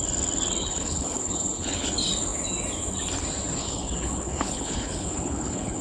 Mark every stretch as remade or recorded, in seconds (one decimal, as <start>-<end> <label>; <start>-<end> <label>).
0.0-0.6 recorded; 0.6-1.9 remade; 1.9-3.6 recorded; 3.6-5.8 remade